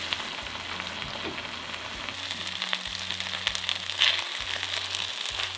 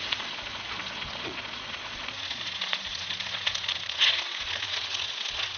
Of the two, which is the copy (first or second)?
second